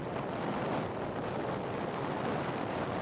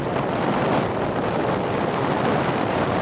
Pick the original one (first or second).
first